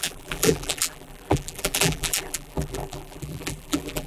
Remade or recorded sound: remade